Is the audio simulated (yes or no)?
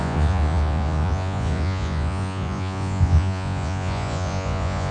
yes